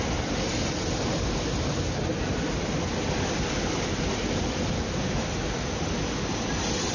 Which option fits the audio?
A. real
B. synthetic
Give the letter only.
A